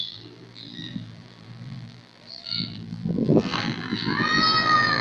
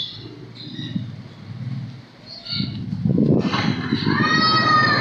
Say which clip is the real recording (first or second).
second